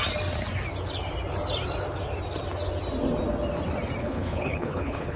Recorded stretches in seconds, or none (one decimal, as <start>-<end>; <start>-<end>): 0.0-4.0